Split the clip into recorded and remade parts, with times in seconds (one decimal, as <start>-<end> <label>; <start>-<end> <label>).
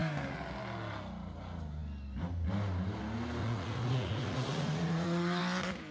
0.0-3.4 recorded; 3.4-5.4 remade; 5.4-5.9 recorded